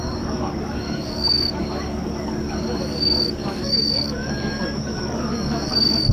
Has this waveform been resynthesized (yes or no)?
yes